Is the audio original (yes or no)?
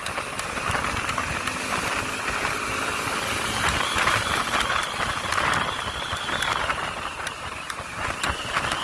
yes